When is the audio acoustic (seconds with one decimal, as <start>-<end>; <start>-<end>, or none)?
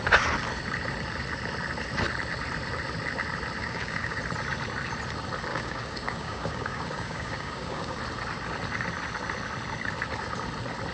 0.0-3.6; 4.2-5.5; 8.0-10.9